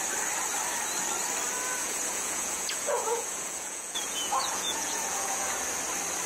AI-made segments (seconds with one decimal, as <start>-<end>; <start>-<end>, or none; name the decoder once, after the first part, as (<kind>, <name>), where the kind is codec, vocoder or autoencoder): 1.8-5.6 (vocoder, Vocos)